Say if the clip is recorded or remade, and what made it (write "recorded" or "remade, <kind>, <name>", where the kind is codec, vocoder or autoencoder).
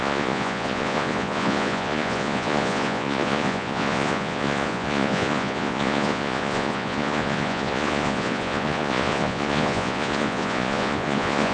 remade, vocoder, Vocos